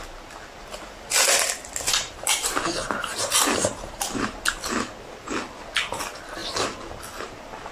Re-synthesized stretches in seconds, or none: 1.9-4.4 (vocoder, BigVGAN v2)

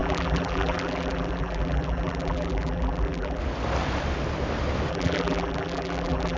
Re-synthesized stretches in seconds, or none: 0.0-3.4 (vocoder, BigVGAN v2); 4.9-6.4

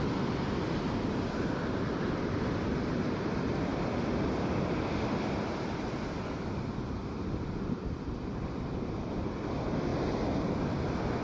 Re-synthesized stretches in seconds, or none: 0.0-9.9 (vocoder, BigVGAN v2)

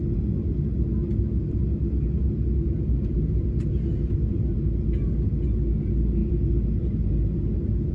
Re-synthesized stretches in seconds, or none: none